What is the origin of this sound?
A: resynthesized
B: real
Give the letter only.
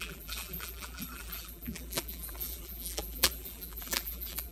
A